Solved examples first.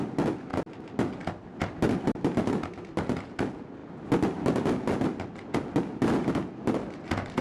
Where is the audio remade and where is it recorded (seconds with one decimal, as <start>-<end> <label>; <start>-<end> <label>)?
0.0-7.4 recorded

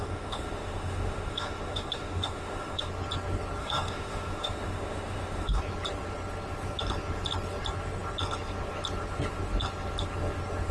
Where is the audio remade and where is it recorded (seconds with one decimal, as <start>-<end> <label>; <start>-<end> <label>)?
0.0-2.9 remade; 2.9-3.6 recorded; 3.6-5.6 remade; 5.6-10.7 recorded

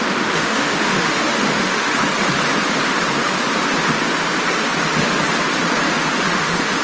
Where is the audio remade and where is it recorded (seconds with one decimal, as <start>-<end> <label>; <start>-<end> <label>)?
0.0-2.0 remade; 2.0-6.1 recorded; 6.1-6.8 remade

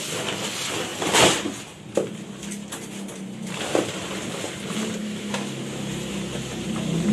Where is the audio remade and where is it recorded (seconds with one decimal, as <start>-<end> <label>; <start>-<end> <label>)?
0.0-5.0 recorded; 5.0-5.6 remade; 5.6-7.1 recorded